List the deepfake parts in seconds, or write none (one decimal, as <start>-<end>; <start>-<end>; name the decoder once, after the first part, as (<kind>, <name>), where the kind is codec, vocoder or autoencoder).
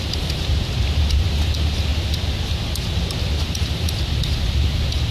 none